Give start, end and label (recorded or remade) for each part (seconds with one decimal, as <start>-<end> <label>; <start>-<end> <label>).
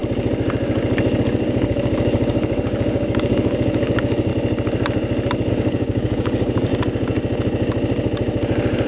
0.0-1.2 recorded; 1.2-4.3 remade; 4.3-5.5 recorded; 5.5-6.7 remade; 6.7-8.9 recorded